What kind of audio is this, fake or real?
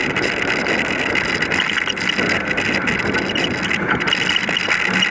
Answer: real